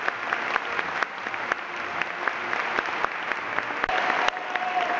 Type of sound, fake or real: real